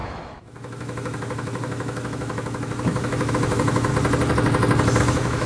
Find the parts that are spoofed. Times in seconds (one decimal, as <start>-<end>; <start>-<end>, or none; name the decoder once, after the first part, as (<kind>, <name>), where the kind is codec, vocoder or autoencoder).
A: 0.0-3.9 (autoencoder, DAC-VAE); 5.0-5.5